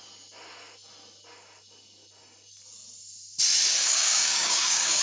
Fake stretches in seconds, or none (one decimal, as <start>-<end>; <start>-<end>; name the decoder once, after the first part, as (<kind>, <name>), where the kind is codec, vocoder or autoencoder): 3.8-5.0 (codec, DAC)